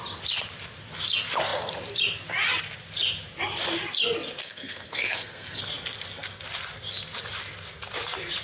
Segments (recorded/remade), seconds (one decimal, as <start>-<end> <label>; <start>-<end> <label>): 0.0-4.4 recorded; 4.4-5.6 remade; 5.6-8.4 recorded